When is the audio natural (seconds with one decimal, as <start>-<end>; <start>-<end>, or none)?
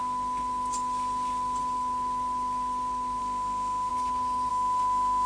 0.0-3.2; 3.9-4.5